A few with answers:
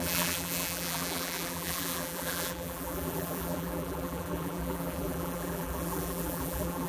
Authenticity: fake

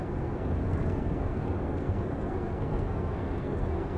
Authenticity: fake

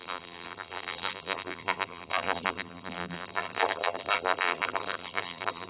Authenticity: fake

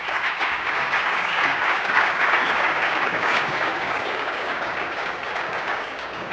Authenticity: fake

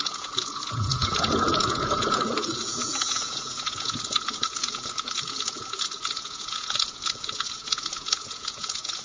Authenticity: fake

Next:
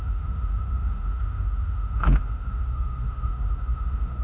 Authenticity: fake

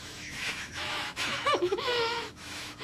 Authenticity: fake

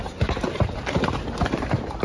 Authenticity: fake